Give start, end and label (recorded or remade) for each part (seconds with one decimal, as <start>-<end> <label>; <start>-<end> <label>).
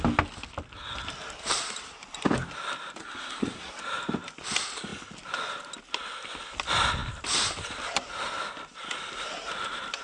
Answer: 0.0-3.0 recorded; 3.0-3.8 remade; 3.8-10.0 recorded